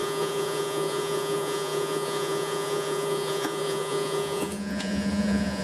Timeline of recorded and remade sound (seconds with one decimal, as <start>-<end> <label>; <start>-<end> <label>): 0.0-5.6 remade

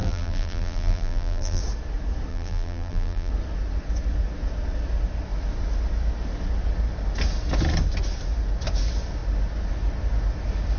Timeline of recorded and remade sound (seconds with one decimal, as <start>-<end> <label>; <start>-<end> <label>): 0.0-1.6 remade; 1.6-2.3 recorded; 2.3-3.3 remade; 3.3-10.8 recorded

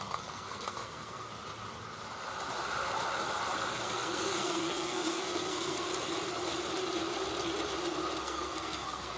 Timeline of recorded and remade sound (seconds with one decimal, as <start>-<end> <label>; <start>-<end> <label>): 0.0-1.3 remade; 1.3-3.7 recorded; 3.7-5.9 remade; 5.9-8.2 recorded; 8.2-9.2 remade

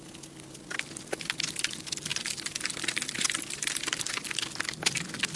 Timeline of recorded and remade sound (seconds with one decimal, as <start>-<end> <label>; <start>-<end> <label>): 0.0-2.1 recorded; 2.1-4.0 remade; 4.0-5.4 recorded

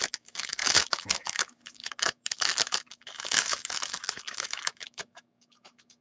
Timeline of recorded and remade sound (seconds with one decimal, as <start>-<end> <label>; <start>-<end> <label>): 0.0-6.0 remade

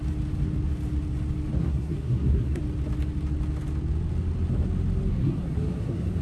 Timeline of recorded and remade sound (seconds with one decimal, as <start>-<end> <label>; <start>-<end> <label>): 0.0-1.6 recorded; 1.6-2.6 remade; 2.6-5.1 recorded; 5.1-6.2 remade